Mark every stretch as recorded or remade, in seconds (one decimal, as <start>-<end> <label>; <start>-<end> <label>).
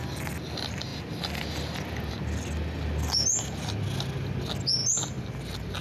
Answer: 0.0-5.8 recorded